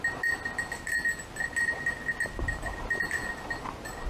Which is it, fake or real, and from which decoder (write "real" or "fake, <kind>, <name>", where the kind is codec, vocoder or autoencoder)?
real